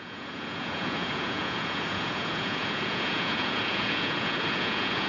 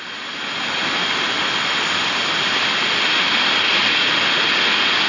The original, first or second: second